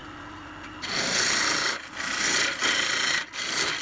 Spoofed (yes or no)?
no